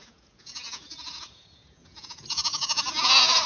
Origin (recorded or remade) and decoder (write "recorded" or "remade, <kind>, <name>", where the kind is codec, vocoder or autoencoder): remade, vocoder, Vocos